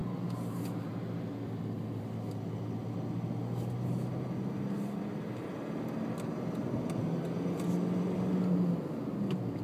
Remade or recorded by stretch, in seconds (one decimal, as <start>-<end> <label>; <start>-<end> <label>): 0.0-9.6 recorded